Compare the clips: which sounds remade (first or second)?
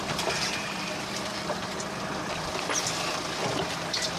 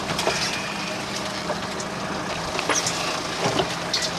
first